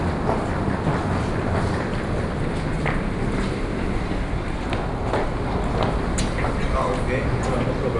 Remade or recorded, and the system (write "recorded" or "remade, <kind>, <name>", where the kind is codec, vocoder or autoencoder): recorded